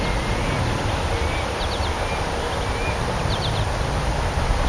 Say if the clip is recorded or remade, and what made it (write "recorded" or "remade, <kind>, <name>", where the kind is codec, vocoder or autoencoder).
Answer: recorded